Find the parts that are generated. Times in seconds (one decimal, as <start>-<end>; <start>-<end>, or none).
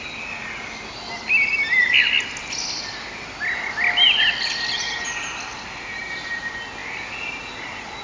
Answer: none